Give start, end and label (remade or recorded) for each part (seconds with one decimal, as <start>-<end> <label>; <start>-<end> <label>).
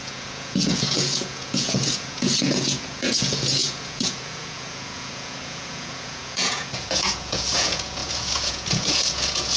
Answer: 0.0-9.6 remade